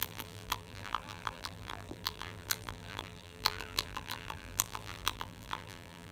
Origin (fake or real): fake